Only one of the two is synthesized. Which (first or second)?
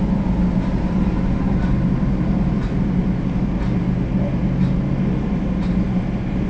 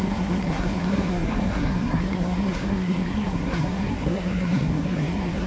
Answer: second